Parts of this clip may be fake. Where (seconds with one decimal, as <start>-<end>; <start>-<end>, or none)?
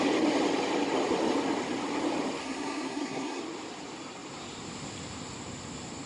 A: 2.4-3.4